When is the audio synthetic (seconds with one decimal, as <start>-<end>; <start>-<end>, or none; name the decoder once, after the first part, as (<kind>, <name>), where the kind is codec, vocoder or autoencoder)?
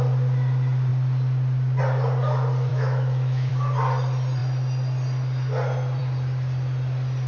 2.7-3.5 (autoencoder, DAC-VAE)